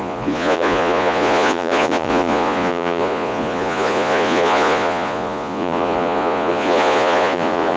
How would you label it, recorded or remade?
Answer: remade